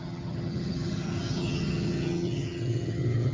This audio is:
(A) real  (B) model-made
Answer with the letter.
B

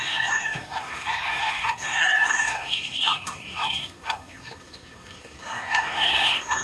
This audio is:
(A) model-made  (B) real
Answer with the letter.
A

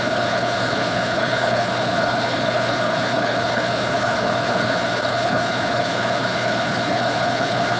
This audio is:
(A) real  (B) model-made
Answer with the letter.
B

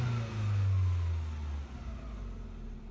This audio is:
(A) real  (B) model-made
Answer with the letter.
A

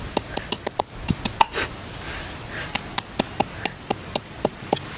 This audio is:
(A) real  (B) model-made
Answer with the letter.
A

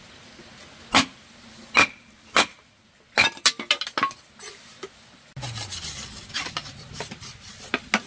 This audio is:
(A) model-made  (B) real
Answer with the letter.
B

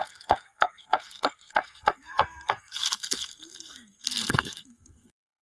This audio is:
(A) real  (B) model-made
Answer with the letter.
B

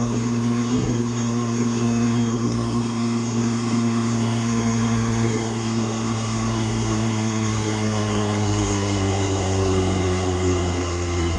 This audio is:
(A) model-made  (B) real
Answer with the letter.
A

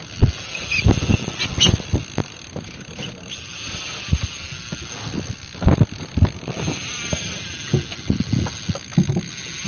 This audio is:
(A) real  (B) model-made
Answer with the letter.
A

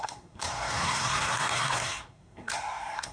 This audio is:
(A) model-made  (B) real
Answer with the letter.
A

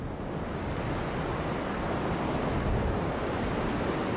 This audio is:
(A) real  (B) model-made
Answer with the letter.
A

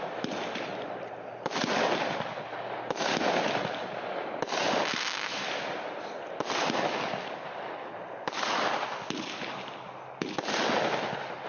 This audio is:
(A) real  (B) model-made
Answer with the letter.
A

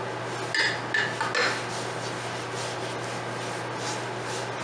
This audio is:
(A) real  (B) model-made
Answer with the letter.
A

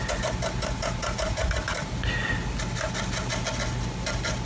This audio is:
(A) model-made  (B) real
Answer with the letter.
B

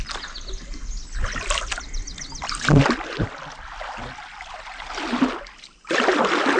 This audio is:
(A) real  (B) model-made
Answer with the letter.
A